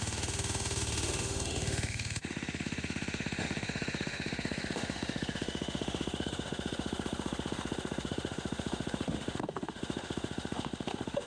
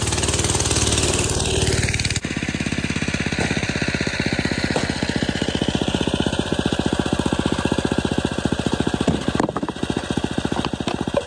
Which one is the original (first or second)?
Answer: second